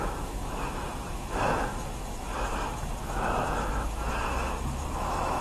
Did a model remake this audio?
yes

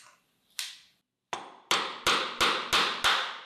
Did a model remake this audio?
no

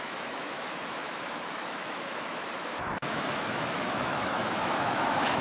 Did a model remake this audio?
yes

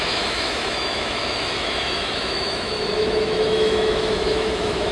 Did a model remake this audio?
yes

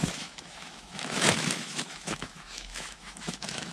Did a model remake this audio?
yes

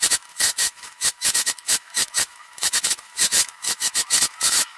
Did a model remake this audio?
yes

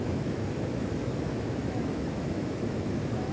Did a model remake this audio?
yes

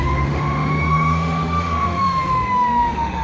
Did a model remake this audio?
yes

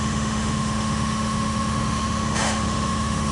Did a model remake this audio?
yes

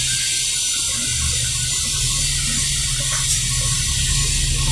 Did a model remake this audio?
no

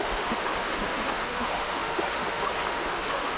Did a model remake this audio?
yes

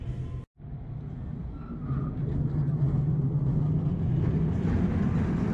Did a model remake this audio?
no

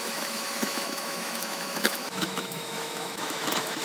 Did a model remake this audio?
yes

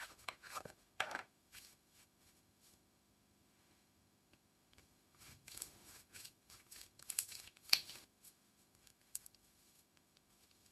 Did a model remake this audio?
yes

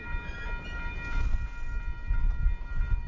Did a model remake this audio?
no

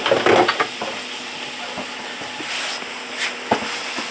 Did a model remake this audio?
no